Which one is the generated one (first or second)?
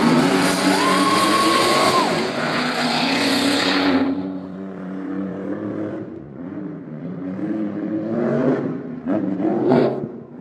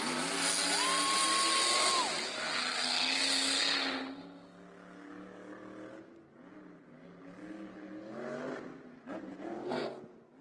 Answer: first